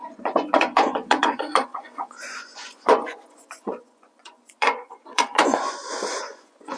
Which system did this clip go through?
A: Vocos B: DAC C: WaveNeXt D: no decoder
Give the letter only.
A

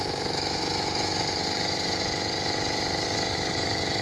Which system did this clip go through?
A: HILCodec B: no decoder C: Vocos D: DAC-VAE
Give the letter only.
D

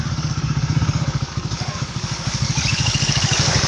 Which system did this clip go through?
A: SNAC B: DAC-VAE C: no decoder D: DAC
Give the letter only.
D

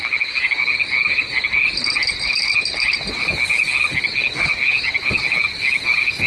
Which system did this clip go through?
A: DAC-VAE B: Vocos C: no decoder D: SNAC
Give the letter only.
C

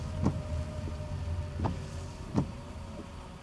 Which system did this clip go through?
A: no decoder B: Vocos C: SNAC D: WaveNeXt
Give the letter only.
A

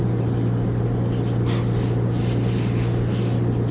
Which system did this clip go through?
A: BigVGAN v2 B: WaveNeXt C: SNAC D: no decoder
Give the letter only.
D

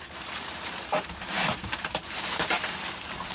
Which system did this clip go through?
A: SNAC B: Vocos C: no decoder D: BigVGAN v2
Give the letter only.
D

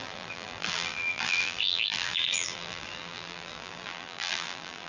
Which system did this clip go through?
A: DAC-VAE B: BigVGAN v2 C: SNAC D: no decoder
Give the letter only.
B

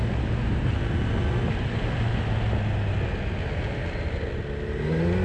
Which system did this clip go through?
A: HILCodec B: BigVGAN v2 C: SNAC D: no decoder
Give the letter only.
D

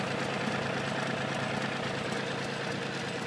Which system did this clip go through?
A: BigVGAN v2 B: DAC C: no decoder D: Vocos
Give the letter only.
C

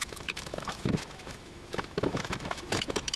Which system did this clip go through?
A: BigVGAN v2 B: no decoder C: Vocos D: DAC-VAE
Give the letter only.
D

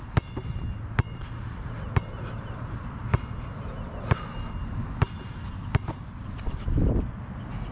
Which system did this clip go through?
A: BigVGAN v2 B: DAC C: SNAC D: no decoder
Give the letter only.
D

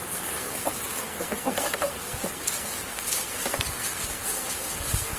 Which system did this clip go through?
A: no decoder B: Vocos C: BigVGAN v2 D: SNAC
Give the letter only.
D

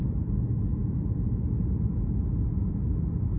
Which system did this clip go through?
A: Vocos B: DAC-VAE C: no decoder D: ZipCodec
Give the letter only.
C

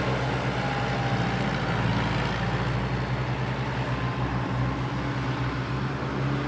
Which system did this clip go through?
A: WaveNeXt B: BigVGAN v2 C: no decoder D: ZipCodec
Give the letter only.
C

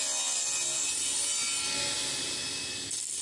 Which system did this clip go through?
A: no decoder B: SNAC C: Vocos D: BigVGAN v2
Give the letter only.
A